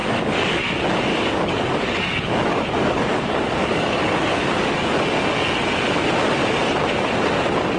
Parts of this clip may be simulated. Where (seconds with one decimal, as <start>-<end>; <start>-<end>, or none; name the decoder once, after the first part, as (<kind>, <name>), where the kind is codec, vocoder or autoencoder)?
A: 0.0-0.6 (codec, DAC); 1.1-4.9